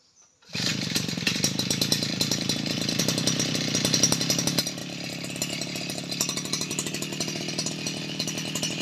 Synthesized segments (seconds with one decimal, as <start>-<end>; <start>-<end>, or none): 0.7-3.0